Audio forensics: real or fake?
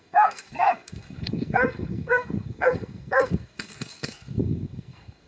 fake